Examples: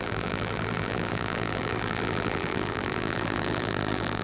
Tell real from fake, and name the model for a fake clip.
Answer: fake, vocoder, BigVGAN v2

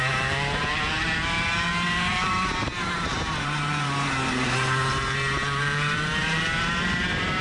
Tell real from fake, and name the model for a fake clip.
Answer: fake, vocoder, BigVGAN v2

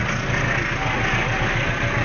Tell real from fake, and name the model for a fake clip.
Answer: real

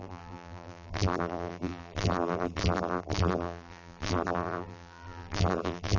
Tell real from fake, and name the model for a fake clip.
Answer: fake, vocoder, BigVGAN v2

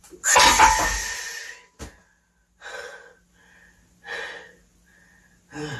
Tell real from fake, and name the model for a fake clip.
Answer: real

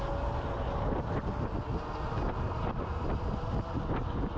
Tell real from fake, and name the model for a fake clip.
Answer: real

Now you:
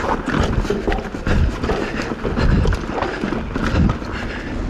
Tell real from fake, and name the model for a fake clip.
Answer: real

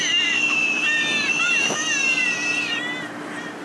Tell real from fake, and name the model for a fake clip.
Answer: real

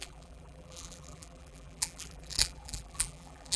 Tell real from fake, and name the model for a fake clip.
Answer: fake, vocoder, BigVGAN v2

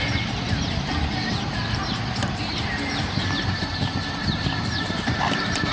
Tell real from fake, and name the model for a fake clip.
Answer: fake, vocoder, BigVGAN v2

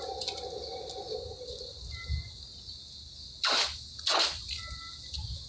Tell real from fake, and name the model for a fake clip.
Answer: real